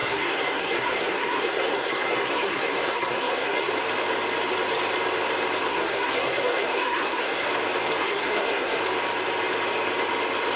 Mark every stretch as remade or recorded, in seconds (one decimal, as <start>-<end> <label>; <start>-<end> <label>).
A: 0.0-3.7 remade; 3.7-5.7 recorded; 5.7-7.5 remade; 7.5-8.0 recorded; 8.0-8.8 remade; 8.8-10.6 recorded